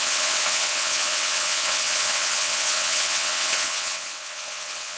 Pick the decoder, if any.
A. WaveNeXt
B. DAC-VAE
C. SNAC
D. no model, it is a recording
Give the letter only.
A